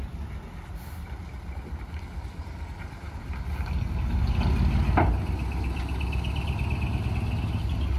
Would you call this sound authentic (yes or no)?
yes